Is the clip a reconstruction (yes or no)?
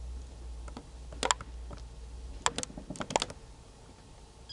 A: no